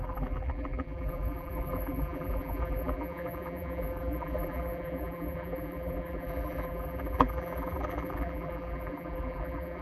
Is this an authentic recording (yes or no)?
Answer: no